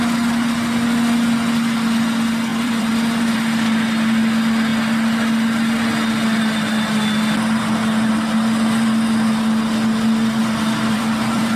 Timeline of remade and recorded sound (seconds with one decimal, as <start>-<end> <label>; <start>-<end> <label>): 0.0-2.5 recorded; 2.5-3.2 remade; 3.2-10.4 recorded; 10.4-11.6 remade

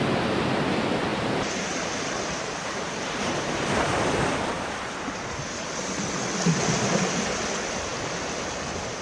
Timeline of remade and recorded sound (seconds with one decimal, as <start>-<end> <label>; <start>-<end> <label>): 0.0-1.1 recorded; 1.1-5.6 remade; 5.6-9.0 recorded

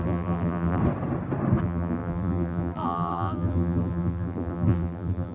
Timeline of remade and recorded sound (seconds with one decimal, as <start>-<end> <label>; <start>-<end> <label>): 0.0-0.8 remade; 0.8-1.6 recorded; 1.6-5.3 remade

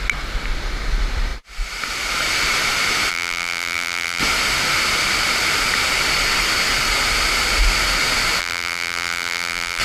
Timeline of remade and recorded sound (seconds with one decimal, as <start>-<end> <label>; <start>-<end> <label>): 0.0-3.1 recorded; 3.1-4.2 remade; 4.2-8.4 recorded; 8.4-9.8 remade

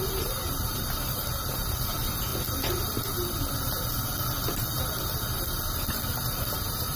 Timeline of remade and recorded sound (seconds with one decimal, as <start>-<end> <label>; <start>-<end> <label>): 0.0-2.3 remade; 2.3-6.5 recorded; 6.5-7.0 remade